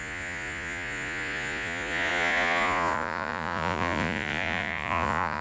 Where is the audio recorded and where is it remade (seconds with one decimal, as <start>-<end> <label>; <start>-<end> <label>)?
0.0-5.4 remade